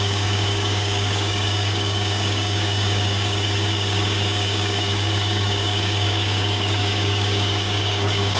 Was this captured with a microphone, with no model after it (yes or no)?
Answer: no